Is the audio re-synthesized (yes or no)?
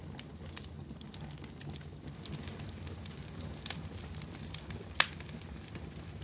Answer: no